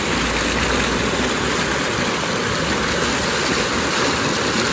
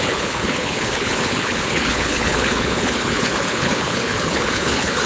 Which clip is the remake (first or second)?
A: second